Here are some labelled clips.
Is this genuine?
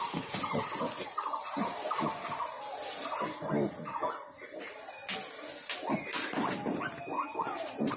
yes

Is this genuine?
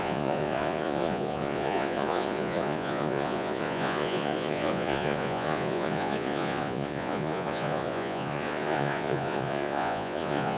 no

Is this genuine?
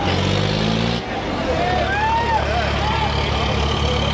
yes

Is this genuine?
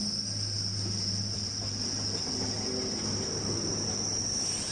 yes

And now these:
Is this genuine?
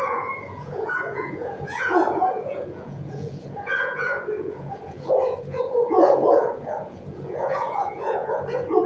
no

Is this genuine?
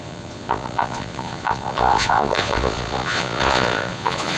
no